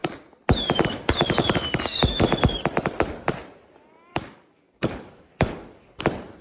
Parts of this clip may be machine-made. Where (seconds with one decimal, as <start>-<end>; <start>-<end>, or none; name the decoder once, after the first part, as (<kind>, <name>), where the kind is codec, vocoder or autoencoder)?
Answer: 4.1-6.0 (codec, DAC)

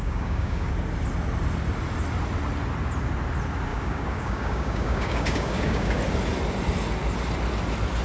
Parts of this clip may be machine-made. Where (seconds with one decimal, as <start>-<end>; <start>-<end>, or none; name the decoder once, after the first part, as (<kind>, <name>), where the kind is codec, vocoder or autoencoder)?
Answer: 0.0-0.7 (codec, DAC); 3.7-6.0

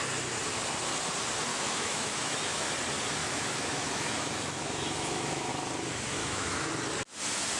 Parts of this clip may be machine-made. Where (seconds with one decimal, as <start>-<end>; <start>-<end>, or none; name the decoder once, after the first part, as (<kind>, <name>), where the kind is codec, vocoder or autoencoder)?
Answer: 1.5-2.7 (autoencoder, DAC-VAE); 3.2-5.5; 6.2-6.7

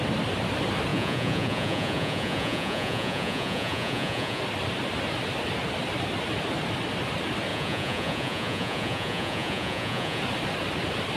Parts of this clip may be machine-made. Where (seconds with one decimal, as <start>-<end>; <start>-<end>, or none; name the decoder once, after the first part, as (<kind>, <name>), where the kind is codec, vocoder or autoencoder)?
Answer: 0.9-4.4 (vocoder, Vocos); 7.5-10.2

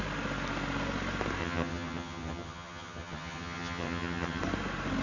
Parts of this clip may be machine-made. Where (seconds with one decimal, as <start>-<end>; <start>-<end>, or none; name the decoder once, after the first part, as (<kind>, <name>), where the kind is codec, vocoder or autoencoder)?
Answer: 1.4-4.4 (vocoder, HiFi-GAN)